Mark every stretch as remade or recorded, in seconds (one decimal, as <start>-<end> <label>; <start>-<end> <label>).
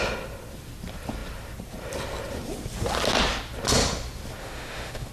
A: 0.0-4.4 recorded; 4.4-5.1 remade